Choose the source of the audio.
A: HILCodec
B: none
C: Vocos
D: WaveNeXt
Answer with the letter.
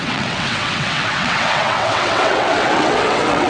D